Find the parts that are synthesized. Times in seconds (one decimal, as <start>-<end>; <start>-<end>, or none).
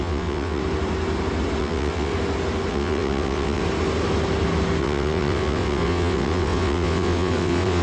0.0-0.6; 1.6-2.1; 2.7-3.6; 4.8-7.8